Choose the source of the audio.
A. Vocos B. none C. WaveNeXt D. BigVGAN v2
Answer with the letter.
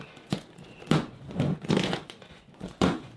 A